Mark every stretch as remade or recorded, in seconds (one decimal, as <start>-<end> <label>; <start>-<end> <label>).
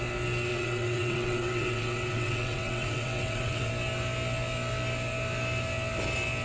0.0-0.5 recorded; 0.5-3.7 remade; 3.7-6.4 recorded